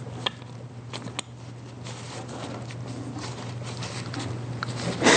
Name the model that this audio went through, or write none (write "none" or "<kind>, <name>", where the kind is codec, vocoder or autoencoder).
none